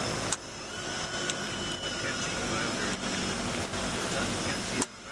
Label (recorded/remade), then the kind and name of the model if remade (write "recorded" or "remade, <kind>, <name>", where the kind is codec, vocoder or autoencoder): recorded